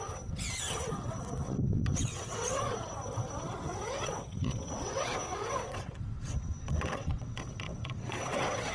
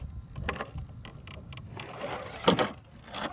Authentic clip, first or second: second